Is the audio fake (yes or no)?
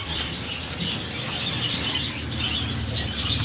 no